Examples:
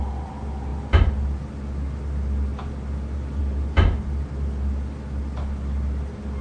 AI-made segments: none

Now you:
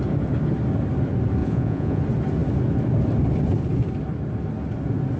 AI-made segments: 1.4-2.0